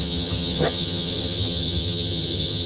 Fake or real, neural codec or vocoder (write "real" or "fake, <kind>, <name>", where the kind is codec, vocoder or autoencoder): fake, vocoder, HiFi-GAN